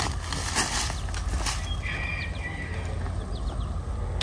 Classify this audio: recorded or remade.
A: recorded